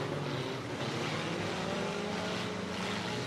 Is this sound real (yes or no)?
yes